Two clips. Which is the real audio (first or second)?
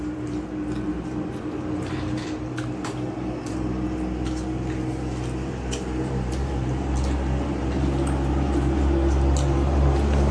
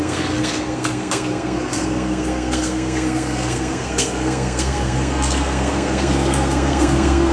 first